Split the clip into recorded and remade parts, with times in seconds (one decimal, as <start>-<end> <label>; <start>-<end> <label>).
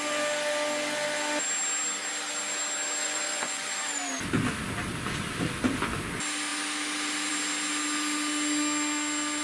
0.0-3.0 recorded; 3.0-3.7 remade; 3.7-9.4 recorded